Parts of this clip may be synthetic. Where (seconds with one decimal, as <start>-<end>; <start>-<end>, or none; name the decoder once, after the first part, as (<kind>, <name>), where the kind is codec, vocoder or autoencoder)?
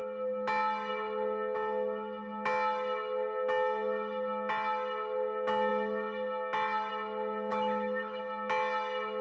7.5-8.2 (autoencoder, DAC-VAE)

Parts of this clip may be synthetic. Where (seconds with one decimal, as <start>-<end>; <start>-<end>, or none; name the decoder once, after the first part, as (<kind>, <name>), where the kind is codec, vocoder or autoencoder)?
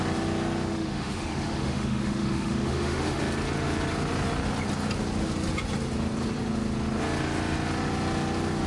0.7-3.2 (autoencoder, DAC-VAE)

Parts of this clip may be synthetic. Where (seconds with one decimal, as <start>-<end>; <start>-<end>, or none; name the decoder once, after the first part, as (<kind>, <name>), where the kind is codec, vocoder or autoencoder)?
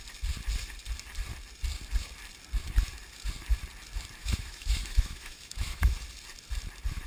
4.2-5.9 (autoencoder, DAC-VAE)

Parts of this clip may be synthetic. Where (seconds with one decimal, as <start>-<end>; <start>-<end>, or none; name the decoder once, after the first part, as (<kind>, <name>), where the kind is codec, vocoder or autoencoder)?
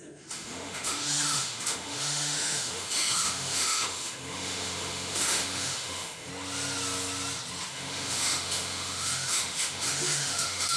0.0-6.3 (autoencoder, DAC-VAE); 7.7-10.8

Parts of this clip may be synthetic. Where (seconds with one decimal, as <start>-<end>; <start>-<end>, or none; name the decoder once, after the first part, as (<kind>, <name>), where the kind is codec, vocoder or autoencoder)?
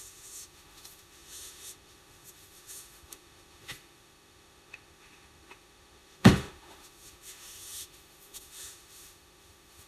0.0-9.9 (autoencoder, DAC-VAE)